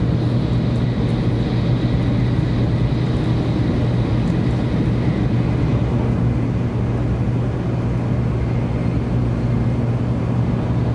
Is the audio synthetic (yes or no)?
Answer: no